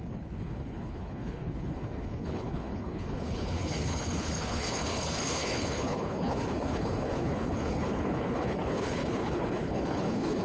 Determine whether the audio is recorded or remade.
remade